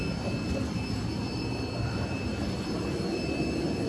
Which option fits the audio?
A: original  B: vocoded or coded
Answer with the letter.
B